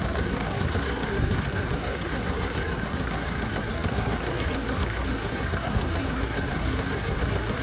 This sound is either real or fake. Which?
fake